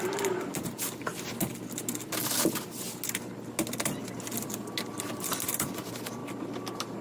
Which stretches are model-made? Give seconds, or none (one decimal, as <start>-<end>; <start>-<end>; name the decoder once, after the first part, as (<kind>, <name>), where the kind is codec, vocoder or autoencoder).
0.0-1.1 (vocoder, BigVGAN v2); 5.3-6.2